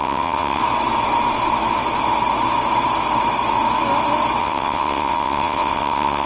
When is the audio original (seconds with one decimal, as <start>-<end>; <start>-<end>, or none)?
0.6-4.4